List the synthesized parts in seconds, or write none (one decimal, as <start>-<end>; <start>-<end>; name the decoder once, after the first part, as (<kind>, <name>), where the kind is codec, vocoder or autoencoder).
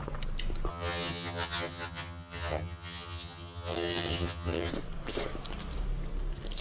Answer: 0.7-4.7 (vocoder, HiFi-GAN)